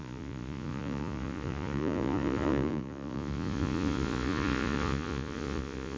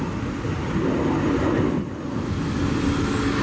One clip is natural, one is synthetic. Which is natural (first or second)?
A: second